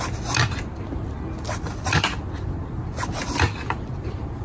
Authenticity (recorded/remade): recorded